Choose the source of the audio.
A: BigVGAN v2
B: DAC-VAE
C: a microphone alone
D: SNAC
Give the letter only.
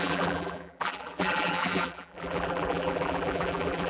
A